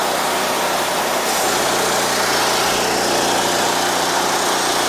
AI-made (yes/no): no